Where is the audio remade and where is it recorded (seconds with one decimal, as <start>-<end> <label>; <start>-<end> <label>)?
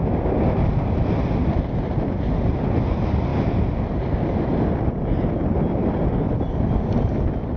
0.0-7.6 recorded